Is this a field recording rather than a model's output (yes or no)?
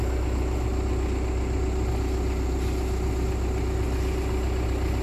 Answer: yes